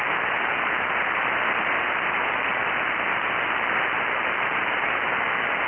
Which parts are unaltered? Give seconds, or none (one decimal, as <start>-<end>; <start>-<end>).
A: 0.0-5.7